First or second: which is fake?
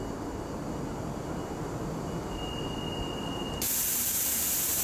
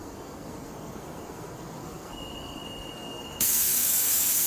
second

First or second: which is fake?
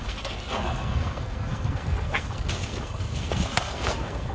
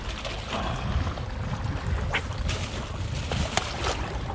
first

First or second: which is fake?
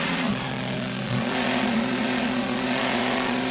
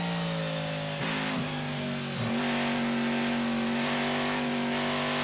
first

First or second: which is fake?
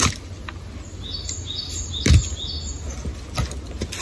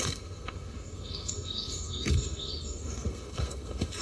second